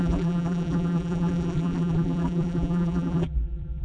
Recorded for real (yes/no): no